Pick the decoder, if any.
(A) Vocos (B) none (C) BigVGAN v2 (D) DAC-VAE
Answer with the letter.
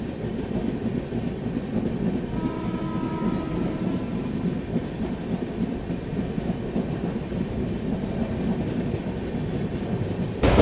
B